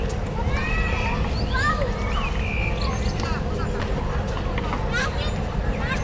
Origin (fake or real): real